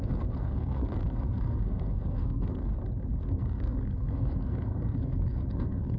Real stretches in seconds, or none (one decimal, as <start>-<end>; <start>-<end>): 2.7-3.2